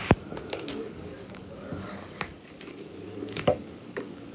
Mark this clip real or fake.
fake